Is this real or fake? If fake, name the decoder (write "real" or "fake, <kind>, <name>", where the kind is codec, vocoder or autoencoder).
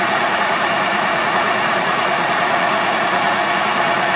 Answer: fake, vocoder, Vocos